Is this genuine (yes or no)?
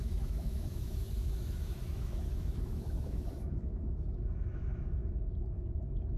no